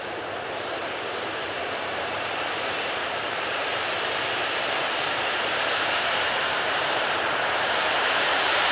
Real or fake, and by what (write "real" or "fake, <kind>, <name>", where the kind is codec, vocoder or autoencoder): fake, vocoder, BigVGAN v2